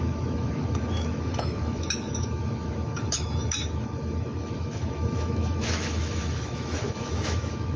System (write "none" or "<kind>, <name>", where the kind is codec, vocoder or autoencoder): autoencoder, DAC-VAE